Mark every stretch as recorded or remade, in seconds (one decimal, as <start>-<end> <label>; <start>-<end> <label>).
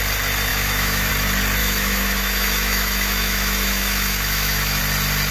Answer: 0.0-0.5 recorded; 0.5-1.1 remade; 1.1-1.6 recorded; 1.6-4.8 remade; 4.8-5.3 recorded